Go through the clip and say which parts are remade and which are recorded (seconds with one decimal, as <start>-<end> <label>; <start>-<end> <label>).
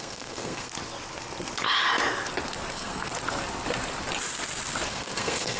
0.0-0.7 remade; 0.7-2.7 recorded; 2.7-3.1 remade; 3.1-4.9 recorded; 4.9-5.6 remade